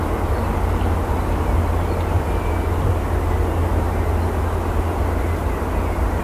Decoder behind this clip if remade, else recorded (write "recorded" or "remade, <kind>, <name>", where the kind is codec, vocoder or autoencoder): recorded